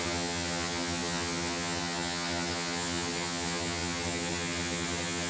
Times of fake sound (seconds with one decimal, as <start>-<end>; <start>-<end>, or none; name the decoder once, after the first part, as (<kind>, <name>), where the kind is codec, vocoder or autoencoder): 0.0-5.3 (vocoder, HiFi-GAN)